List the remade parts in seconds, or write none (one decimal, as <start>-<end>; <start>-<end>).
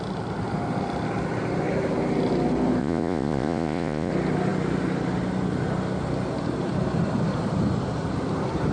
2.8-4.1